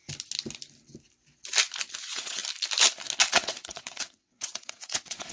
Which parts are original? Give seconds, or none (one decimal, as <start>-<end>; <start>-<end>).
0.0-2.0; 2.4-3.3